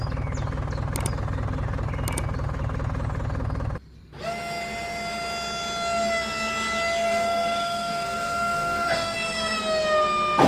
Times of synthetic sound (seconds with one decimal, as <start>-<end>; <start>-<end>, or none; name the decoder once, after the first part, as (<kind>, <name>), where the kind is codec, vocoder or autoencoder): 7.1-9.6 (codec, SNAC)